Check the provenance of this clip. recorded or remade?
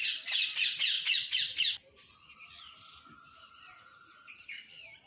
recorded